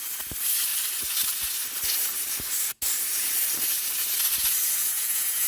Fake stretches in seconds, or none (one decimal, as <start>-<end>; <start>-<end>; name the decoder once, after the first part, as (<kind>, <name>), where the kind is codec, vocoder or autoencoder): 4.8-5.5 (vocoder, Vocos)